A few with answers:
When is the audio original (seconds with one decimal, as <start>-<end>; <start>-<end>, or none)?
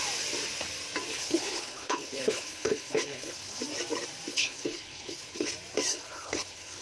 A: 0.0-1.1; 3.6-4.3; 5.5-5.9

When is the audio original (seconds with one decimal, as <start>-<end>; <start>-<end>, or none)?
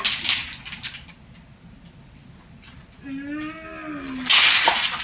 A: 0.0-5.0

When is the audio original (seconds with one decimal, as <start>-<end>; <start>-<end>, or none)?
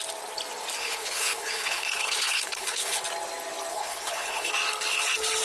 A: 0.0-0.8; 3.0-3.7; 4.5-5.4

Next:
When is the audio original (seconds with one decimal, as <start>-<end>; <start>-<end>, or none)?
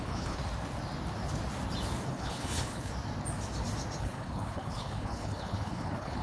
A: 0.4-2.1; 2.9-4.0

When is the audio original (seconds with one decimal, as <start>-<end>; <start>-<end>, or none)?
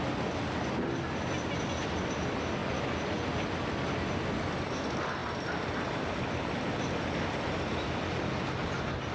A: 0.0-9.1